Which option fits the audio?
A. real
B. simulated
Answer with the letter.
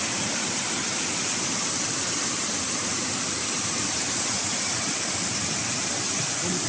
A